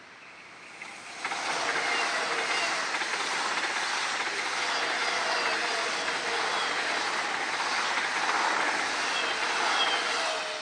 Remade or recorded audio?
recorded